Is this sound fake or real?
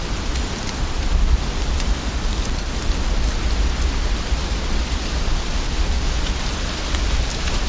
real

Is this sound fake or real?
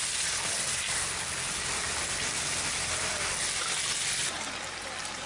real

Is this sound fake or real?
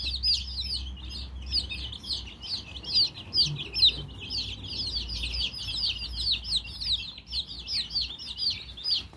real